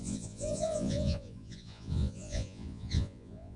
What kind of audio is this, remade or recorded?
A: remade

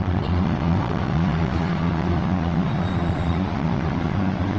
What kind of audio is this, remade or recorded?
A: remade